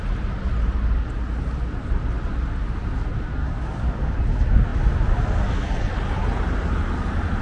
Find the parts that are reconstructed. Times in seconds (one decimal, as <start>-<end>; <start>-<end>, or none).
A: 3.4-4.1